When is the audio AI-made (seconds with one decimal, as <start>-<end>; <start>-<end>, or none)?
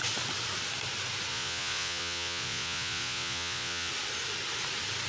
1.3-3.9